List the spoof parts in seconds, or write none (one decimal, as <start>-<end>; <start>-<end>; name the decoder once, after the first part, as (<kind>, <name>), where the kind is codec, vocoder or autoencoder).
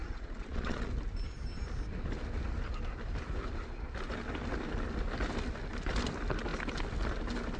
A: 0.0-0.9 (vocoder, Vocos)